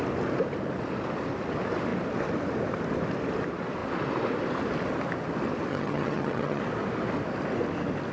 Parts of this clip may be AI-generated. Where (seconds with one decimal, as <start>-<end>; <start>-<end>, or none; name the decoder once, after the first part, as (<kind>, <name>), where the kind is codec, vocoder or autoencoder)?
5.7-6.6 (vocoder, HiFi-GAN)